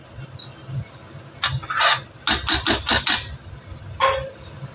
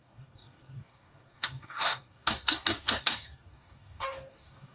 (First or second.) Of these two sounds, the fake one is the second